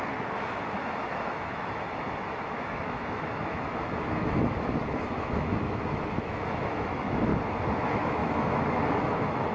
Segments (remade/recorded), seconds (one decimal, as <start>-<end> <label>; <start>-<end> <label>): 0.0-7.3 remade; 7.3-7.8 recorded; 7.8-9.5 remade